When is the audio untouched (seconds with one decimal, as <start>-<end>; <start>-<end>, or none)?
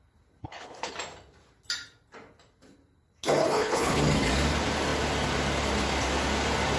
0.0-0.4; 0.9-3.4; 4.0-6.8